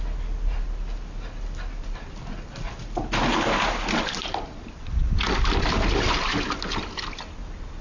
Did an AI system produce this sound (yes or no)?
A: no